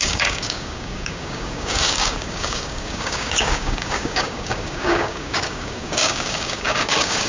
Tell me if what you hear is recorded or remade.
remade